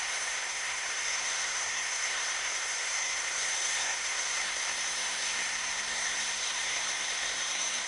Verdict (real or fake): fake